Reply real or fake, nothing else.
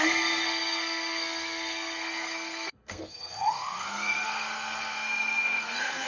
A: fake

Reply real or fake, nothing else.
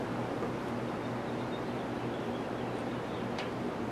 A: real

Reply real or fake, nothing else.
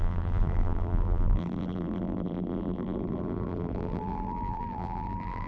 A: fake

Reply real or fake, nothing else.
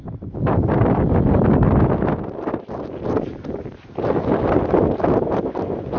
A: real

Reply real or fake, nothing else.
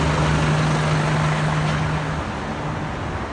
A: real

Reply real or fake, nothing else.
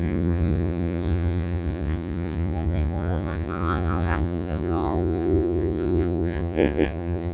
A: fake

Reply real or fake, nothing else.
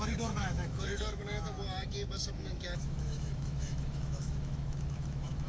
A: fake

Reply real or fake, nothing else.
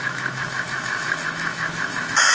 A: fake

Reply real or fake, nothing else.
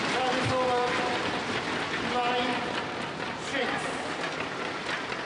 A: real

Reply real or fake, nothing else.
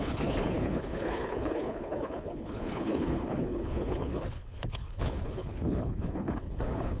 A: fake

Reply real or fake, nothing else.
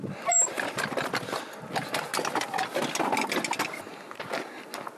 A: real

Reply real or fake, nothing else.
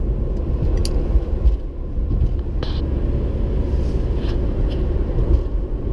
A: real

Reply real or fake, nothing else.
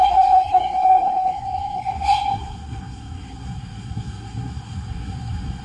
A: fake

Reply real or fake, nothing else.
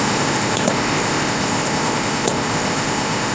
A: fake